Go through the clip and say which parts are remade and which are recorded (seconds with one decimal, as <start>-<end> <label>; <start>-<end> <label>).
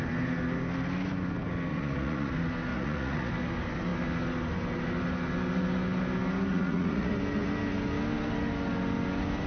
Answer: 0.0-1.7 recorded; 1.7-2.3 remade; 2.3-2.7 recorded; 2.7-3.3 remade; 3.3-6.5 recorded; 6.5-7.1 remade; 7.1-9.5 recorded